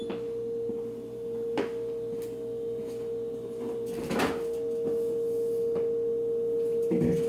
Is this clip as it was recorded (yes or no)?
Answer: yes